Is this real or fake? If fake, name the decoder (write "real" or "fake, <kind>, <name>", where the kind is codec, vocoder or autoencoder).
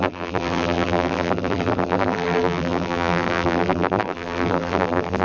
fake, vocoder, BigVGAN v2